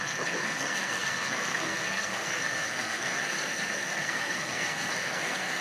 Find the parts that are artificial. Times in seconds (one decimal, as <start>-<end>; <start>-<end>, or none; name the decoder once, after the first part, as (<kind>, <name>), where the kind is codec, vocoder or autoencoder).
0.0-5.6 (codec, SNAC)